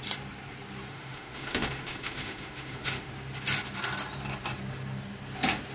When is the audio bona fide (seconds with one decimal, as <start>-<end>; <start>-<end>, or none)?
0.0-0.9; 3.1-5.7